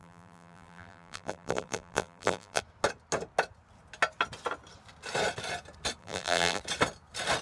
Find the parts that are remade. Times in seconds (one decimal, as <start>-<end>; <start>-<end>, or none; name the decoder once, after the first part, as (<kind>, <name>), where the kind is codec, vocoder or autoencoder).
0.0-2.6 (vocoder, BigVGAN v2); 6.0-6.6